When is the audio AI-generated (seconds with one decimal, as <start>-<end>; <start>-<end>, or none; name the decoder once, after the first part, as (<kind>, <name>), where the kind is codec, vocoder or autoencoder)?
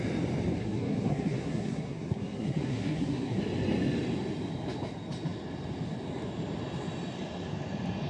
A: 0.6-3.4 (codec, SNAC)